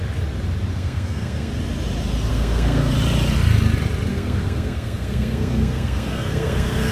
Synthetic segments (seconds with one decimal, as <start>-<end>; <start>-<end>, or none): 0.7-1.5; 2.3-2.9; 4.1-6.9